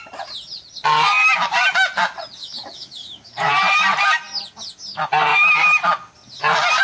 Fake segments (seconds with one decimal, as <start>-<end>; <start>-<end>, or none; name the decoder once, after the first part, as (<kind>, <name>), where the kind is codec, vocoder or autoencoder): 2.4-3.5 (autoencoder, DAC-VAE)